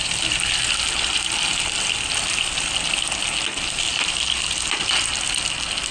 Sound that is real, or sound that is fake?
real